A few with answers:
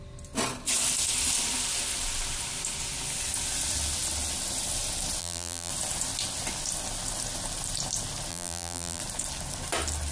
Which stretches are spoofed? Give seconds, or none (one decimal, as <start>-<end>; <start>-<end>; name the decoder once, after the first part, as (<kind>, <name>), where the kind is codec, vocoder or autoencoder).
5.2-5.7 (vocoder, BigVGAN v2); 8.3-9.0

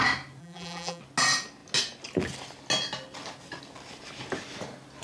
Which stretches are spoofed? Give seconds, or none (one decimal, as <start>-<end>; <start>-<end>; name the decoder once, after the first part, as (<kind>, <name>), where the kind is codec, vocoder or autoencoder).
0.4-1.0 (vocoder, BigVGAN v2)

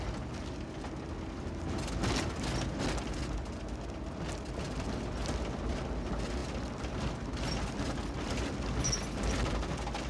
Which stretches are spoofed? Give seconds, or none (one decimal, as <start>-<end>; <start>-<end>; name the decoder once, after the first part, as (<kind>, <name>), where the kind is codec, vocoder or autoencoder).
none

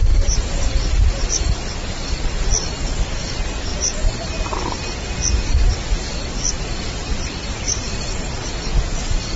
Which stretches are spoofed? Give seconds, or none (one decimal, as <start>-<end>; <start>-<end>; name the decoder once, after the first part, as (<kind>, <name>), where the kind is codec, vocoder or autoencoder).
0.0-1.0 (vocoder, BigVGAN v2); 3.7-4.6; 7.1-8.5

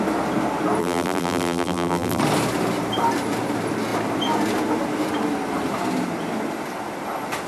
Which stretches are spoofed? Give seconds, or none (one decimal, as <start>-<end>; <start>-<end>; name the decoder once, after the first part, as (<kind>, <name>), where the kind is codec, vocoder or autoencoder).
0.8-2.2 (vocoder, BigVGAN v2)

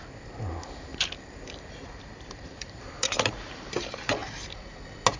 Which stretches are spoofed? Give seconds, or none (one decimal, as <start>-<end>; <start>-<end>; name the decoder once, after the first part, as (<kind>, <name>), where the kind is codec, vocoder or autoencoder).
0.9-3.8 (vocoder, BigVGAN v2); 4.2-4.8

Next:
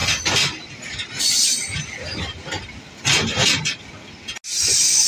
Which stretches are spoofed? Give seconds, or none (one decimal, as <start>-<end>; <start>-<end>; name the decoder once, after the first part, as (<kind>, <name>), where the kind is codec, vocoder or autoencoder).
none